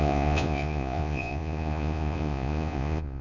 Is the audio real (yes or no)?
no